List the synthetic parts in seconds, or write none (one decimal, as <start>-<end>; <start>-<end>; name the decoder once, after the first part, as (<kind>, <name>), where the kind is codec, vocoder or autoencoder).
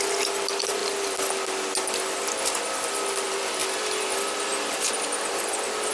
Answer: none